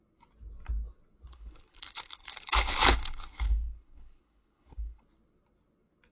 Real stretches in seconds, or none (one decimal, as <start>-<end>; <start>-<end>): 0.0-1.3; 5.0-6.1